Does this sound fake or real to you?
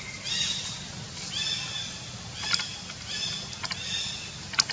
real